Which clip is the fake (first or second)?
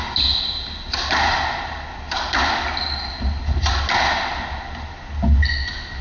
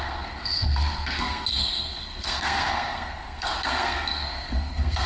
second